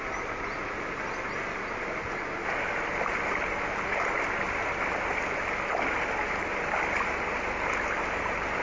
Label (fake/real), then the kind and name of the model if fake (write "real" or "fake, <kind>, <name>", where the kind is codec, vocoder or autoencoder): real